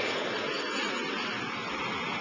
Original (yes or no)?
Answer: yes